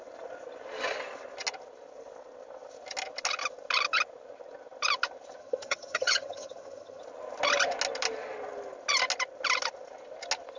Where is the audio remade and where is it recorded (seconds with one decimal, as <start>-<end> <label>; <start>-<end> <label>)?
0.0-5.4 recorded; 5.4-7.0 remade; 7.0-10.6 recorded